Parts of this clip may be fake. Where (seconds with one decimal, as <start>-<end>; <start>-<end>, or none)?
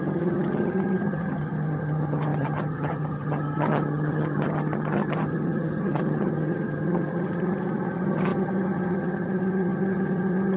0.0-10.6